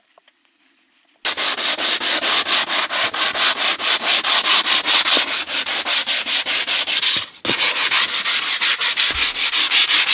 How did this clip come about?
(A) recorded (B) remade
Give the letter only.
A